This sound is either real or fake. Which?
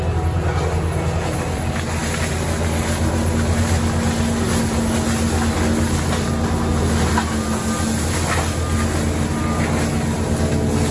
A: real